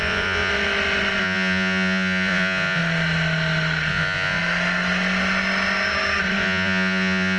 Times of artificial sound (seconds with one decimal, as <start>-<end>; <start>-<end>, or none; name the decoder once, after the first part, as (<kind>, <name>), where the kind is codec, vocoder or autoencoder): 0.0-0.5 (vocoder, Vocos); 1.2-2.8; 3.9-4.4; 6.4-7.4